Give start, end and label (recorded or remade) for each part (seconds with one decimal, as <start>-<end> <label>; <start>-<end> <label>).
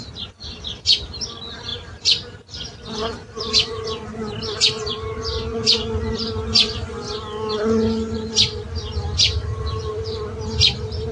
0.0-11.1 recorded